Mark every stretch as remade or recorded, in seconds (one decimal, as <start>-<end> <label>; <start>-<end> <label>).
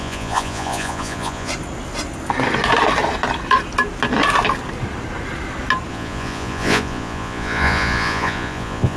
0.0-1.5 remade; 1.5-5.9 recorded; 5.9-9.0 remade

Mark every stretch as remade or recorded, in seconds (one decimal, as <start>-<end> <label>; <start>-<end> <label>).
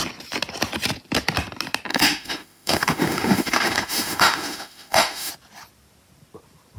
0.0-1.9 recorded; 1.9-5.3 remade; 5.3-6.8 recorded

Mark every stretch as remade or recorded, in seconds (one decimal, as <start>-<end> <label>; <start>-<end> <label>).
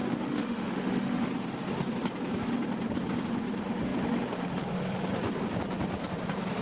0.0-1.3 remade; 1.3-6.6 recorded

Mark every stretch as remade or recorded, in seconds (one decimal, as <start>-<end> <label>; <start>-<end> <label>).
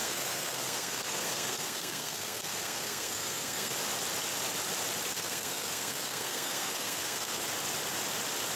0.0-3.7 remade; 3.7-5.1 recorded; 5.1-7.4 remade; 7.4-8.6 recorded